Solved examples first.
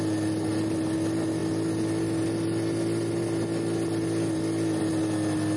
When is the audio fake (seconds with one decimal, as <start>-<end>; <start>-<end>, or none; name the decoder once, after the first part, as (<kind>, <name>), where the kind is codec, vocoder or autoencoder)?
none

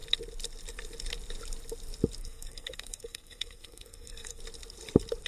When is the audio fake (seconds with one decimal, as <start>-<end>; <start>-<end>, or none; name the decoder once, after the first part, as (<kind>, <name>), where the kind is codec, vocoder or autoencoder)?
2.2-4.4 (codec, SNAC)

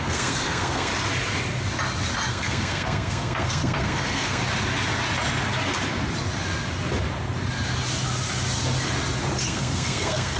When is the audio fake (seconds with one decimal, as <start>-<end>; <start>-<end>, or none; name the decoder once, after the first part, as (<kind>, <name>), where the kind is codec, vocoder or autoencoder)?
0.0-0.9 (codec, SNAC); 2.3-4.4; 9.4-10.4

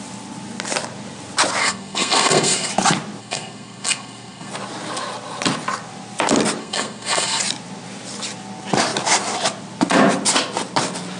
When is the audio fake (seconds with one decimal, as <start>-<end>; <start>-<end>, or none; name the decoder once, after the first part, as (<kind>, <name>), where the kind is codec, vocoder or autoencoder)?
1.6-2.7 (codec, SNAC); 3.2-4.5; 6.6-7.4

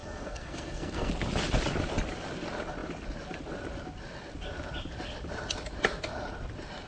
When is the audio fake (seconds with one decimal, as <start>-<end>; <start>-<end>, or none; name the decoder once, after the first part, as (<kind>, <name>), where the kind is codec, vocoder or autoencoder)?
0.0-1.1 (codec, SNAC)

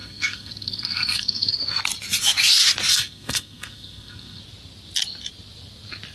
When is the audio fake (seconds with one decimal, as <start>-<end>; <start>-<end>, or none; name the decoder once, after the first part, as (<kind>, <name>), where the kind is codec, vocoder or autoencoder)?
0.0-1.5 (codec, SNAC); 2.9-4.4